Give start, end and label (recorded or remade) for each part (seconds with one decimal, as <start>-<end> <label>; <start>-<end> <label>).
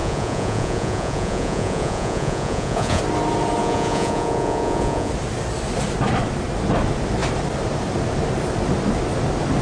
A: 0.0-3.0 remade; 3.0-3.6 recorded; 3.6-5.1 remade; 5.1-9.6 recorded